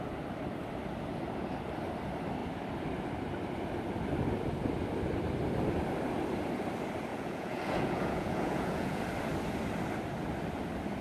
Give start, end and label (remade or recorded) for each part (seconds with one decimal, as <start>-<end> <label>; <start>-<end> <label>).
0.0-7.1 recorded; 7.1-9.0 remade; 9.0-11.0 recorded